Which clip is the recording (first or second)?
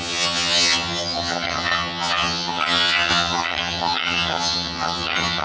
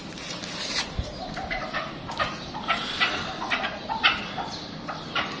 second